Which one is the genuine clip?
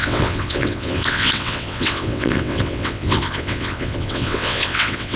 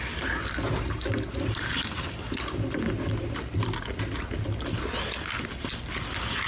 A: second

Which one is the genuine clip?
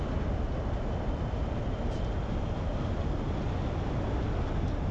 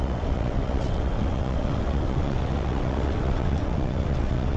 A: first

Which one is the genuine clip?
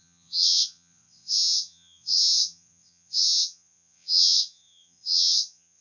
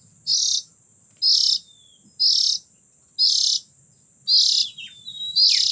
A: second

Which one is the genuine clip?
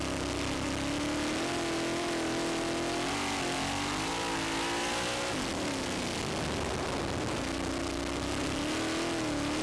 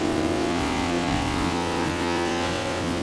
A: first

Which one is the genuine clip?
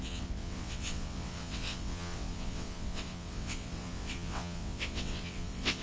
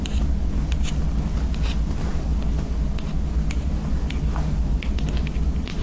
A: second